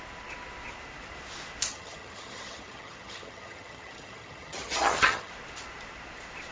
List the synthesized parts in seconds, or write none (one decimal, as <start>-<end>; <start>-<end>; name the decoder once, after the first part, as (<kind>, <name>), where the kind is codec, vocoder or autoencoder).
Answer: 1.7-5.3 (vocoder, HiFi-GAN)